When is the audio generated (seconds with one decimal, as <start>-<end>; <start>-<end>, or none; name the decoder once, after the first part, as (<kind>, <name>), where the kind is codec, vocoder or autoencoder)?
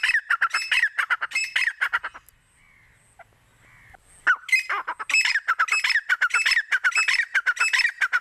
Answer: none